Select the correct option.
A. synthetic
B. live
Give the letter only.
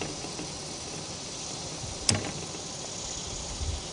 B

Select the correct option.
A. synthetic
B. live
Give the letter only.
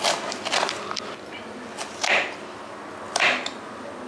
B